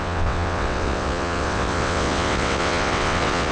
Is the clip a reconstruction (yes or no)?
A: yes